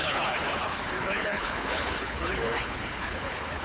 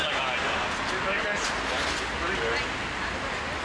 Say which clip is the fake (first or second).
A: first